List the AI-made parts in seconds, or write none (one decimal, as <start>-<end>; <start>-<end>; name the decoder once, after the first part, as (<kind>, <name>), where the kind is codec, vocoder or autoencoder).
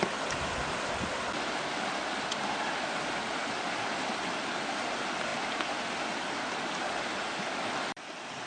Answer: none